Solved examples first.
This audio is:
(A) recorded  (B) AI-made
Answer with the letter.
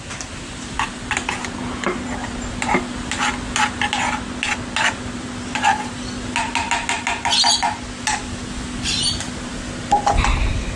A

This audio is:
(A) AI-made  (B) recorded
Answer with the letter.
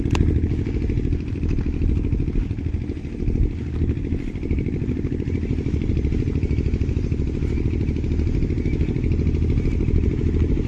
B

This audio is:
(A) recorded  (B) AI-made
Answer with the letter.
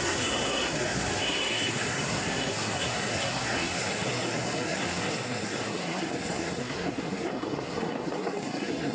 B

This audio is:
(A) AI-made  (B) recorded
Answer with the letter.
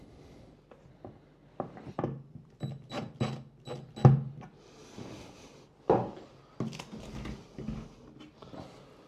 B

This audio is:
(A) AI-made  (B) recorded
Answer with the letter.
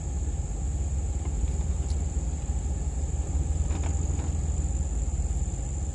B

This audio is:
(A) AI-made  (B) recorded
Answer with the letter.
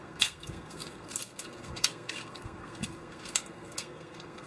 A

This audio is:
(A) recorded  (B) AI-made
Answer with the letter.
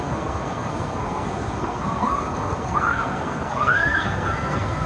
B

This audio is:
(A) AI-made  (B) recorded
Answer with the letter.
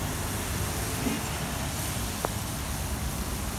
B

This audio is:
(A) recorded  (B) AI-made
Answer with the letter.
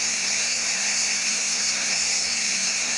B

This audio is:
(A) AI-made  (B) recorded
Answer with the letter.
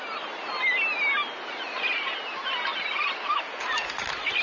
B